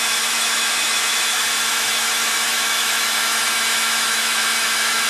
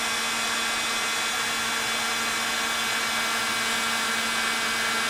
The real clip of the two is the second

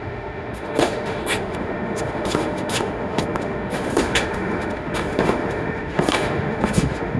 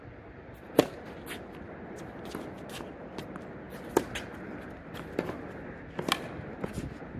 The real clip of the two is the second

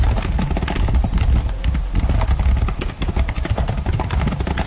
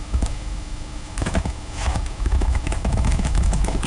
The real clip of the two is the first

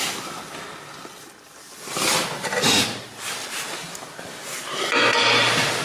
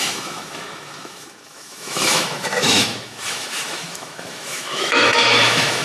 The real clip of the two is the first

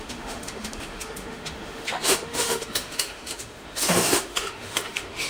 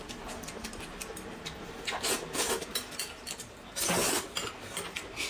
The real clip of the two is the second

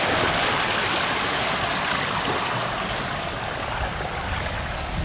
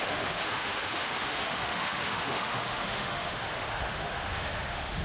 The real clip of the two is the first